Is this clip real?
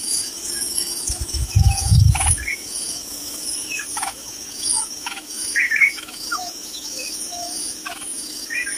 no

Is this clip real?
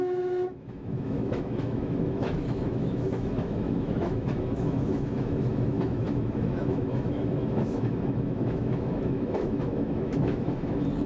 no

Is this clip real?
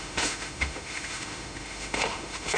no